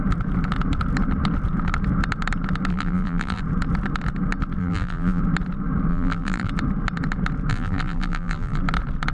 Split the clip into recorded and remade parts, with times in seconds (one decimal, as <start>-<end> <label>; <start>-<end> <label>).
0.0-2.7 recorded; 2.7-3.4 remade; 3.4-4.6 recorded; 4.6-5.2 remade; 5.2-5.9 recorded; 5.9-6.5 remade; 6.5-7.5 recorded; 7.5-8.6 remade; 8.6-9.1 recorded